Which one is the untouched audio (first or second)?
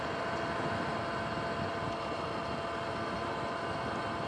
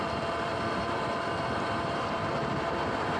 first